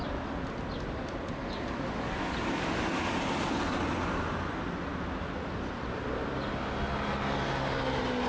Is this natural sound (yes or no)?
yes